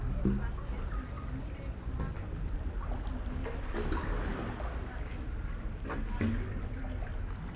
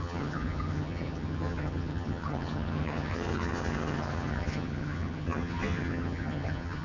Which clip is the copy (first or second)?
second